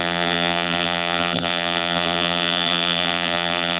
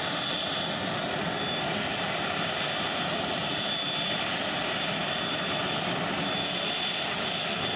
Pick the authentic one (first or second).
second